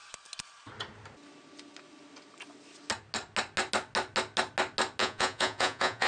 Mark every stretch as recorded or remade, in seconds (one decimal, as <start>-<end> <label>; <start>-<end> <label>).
0.0-5.0 recorded; 5.0-6.1 remade